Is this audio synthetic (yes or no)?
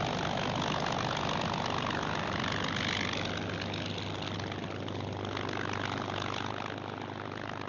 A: no